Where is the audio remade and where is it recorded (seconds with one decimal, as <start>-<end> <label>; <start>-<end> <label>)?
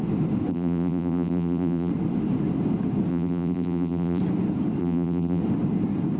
0.0-0.5 recorded; 0.5-1.9 remade; 1.9-3.1 recorded; 3.1-4.2 remade; 4.2-4.8 recorded; 4.8-5.4 remade; 5.4-6.2 recorded